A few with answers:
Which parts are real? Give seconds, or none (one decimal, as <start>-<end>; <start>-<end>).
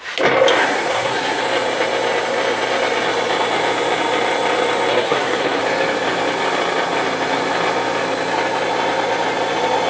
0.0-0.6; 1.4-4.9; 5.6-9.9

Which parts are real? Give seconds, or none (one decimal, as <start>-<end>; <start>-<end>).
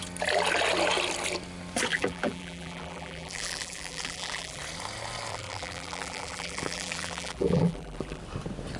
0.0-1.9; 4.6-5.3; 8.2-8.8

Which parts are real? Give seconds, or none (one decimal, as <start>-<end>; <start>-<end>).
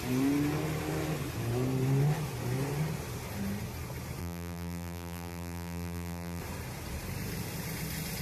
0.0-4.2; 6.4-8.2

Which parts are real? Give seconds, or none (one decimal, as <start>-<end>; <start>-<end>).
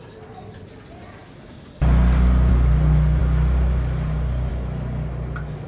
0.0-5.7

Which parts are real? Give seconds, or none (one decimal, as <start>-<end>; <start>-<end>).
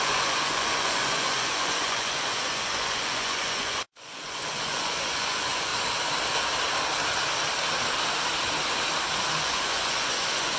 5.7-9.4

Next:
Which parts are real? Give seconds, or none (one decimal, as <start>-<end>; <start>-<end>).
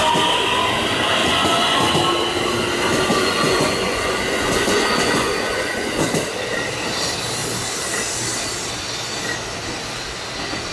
0.0-1.2; 1.9-3.1; 6.1-10.7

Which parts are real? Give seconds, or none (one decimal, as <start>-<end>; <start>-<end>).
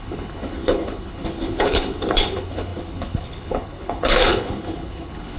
none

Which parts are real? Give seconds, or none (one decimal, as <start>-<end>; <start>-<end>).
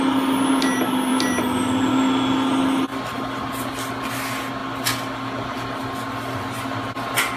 0.0-7.4